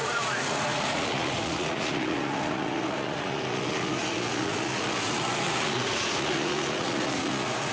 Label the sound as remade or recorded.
remade